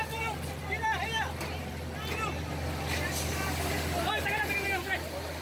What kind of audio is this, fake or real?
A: real